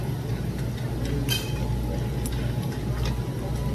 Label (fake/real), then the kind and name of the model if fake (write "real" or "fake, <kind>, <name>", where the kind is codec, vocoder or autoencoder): real